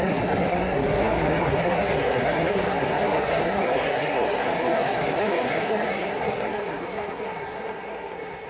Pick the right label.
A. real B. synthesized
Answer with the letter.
B